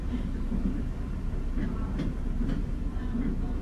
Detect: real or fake real